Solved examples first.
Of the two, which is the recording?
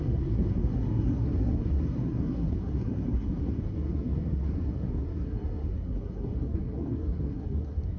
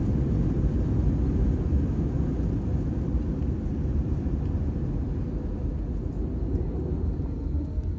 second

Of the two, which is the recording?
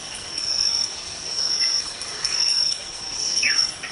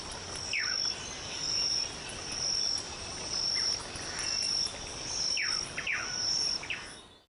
second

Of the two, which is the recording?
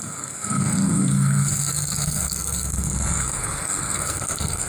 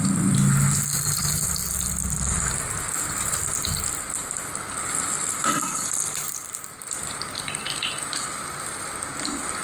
second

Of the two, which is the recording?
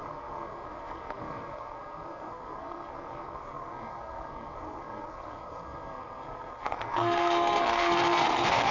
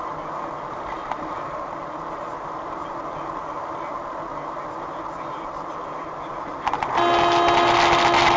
second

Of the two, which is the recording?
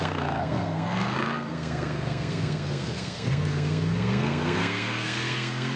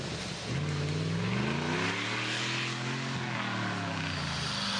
second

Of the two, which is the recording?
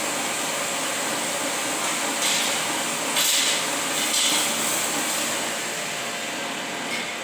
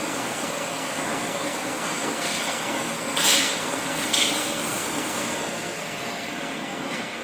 first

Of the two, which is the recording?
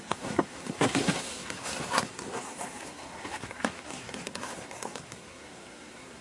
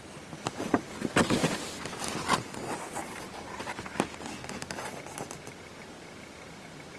second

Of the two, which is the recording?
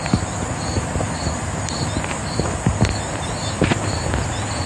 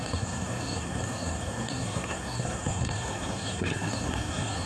first